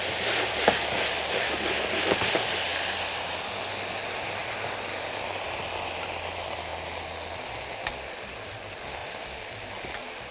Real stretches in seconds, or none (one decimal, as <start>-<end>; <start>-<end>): 0.0-10.3